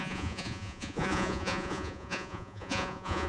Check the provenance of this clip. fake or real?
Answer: fake